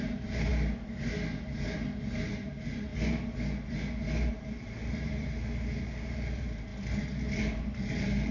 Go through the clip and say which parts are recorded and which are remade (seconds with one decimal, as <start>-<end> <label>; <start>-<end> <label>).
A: 0.0-0.5 remade; 0.5-2.3 recorded; 2.3-2.9 remade; 2.9-4.3 recorded; 4.3-6.7 remade; 6.7-7.4 recorded; 7.4-8.3 remade